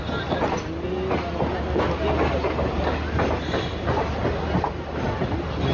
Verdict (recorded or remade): recorded